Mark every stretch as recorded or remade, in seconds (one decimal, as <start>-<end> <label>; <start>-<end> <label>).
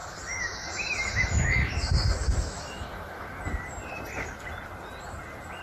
0.0-3.4 remade; 3.4-5.6 recorded